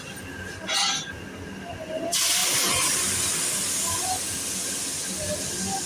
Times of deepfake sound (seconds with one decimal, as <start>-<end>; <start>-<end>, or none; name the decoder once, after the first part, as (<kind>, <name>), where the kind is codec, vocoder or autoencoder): none